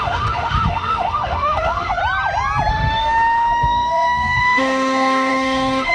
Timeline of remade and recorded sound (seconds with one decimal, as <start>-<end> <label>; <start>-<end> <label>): 0.0-2.0 remade; 2.0-2.7 recorded; 2.7-5.9 remade